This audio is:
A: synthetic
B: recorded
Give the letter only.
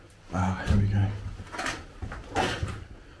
B